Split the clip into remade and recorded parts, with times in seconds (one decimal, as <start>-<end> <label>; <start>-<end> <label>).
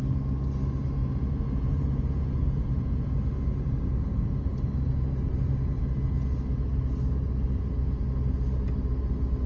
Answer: 0.0-1.0 recorded; 1.0-3.1 remade; 3.1-9.5 recorded